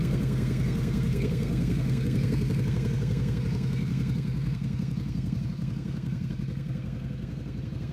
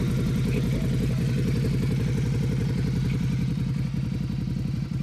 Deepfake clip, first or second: first